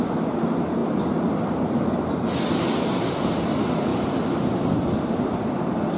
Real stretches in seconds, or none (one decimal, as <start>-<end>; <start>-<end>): 0.0-3.9; 5.2-6.0